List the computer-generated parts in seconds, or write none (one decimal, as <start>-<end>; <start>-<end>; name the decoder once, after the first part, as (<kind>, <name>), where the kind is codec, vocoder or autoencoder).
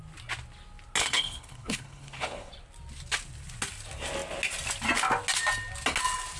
1.0-2.5 (codec, HILCodec)